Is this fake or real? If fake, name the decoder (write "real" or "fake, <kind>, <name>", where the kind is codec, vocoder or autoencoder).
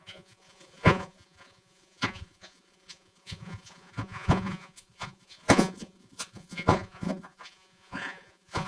fake, vocoder, Vocos